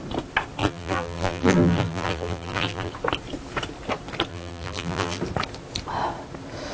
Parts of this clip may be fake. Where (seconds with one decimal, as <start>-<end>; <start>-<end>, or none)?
0.6-2.9; 4.3-5.2